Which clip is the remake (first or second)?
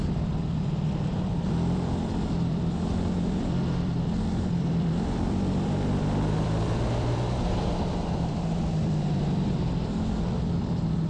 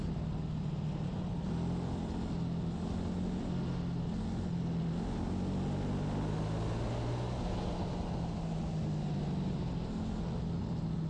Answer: first